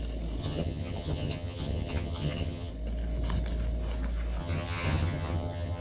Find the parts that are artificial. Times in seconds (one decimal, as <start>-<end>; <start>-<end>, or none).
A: 0.4-2.7; 4.4-5.8